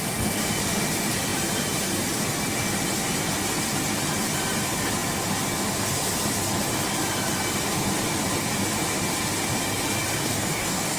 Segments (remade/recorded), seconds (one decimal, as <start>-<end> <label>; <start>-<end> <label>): 0.0-10.2 recorded; 10.2-11.0 remade